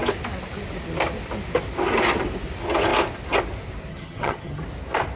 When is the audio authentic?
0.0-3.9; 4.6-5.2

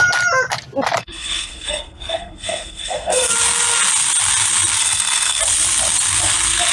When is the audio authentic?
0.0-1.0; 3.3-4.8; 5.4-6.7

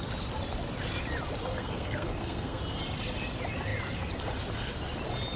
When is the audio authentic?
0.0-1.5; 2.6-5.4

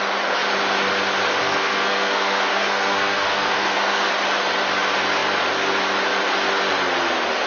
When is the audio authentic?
0.0-1.4; 4.1-7.5